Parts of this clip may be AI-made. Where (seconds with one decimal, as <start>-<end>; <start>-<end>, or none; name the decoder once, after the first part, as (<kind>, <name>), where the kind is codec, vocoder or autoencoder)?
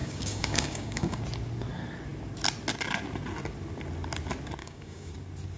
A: 0.0-1.2 (codec, DAC); 4.6-5.1